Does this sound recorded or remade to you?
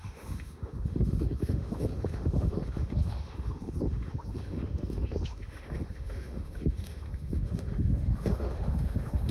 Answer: remade